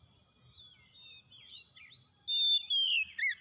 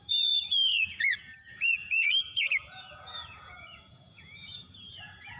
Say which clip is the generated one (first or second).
second